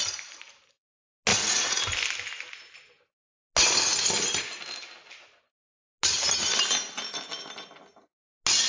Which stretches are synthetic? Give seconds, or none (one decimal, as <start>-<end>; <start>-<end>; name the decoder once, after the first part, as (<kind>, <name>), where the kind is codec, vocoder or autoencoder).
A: 1.3-1.8 (vocoder, Vocos)